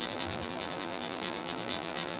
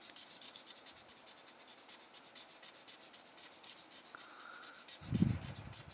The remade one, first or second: first